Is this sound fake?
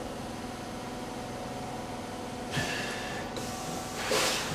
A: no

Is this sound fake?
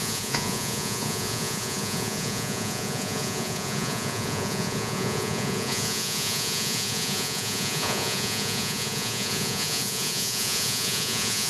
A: yes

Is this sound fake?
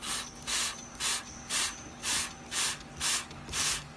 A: no